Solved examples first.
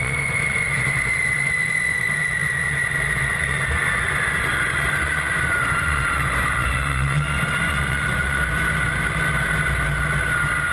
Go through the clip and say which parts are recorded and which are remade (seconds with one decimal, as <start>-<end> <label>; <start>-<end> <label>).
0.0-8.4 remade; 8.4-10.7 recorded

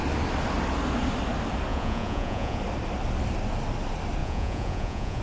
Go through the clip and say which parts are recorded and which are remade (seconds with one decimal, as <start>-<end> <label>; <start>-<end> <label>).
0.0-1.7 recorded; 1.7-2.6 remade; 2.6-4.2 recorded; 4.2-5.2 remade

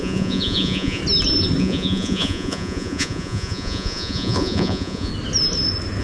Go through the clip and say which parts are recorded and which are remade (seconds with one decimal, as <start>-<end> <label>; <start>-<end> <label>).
0.0-1.0 remade; 1.0-1.6 recorded; 1.6-5.1 remade; 5.1-6.0 recorded

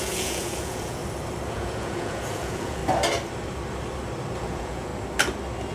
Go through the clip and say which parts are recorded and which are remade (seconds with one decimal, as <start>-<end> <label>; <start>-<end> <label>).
0.0-1.0 remade; 1.0-1.5 recorded; 1.5-2.8 remade; 2.8-4.4 recorded; 4.4-4.9 remade; 4.9-5.7 recorded

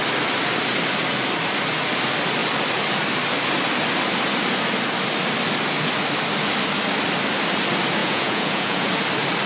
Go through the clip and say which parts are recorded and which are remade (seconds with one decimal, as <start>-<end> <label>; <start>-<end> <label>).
0.0-8.0 recorded; 8.0-8.9 remade; 8.9-9.5 recorded

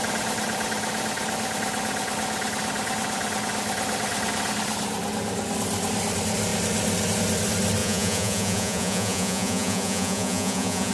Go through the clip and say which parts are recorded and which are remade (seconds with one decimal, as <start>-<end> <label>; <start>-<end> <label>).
0.0-7.8 recorded; 7.8-10.9 remade